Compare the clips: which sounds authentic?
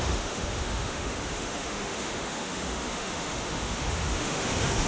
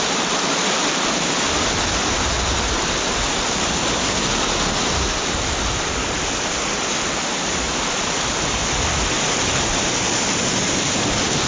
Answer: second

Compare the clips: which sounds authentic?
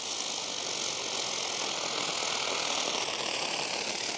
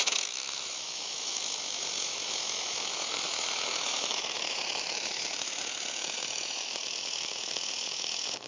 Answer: first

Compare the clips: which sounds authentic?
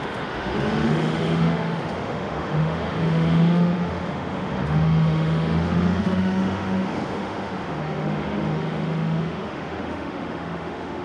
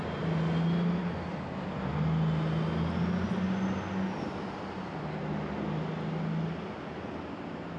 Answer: second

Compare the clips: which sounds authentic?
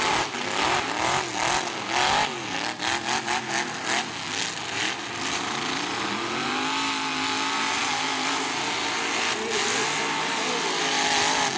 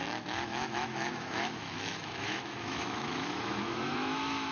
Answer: first